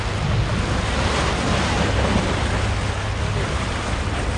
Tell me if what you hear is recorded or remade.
recorded